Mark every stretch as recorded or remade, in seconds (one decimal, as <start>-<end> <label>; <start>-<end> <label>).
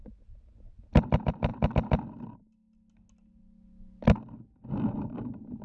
0.0-5.6 recorded